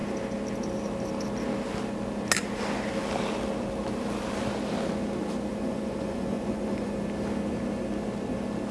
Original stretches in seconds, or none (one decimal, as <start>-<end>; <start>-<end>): 0.0-5.5; 7.0-8.7